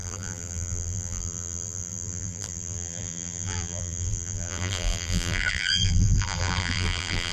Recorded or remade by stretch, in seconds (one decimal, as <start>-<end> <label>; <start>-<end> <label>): 0.0-7.3 remade